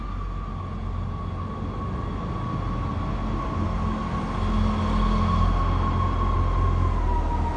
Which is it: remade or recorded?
recorded